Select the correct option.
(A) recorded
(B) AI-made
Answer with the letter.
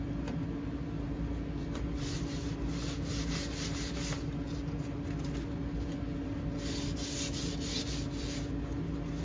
A